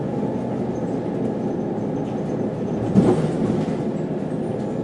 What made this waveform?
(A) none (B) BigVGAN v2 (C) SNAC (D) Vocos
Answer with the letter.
A